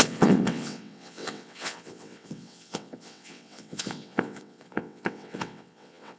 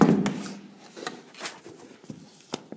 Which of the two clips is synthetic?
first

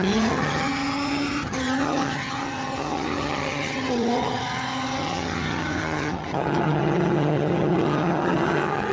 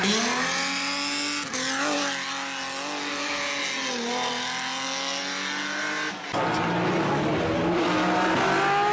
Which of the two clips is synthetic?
first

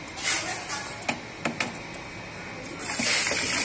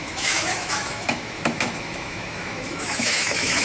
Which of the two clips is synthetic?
second